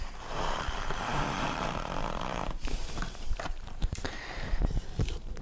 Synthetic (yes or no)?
yes